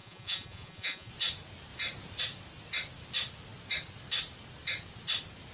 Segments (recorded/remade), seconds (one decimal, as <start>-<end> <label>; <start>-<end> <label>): 0.0-1.1 remade; 1.1-5.5 recorded